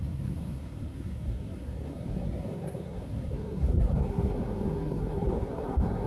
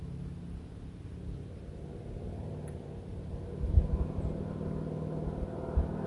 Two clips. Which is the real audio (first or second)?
second